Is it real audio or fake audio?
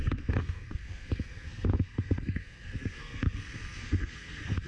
fake